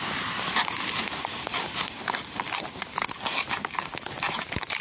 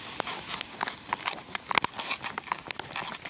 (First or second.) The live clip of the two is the second